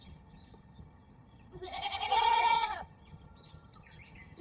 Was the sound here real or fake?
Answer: fake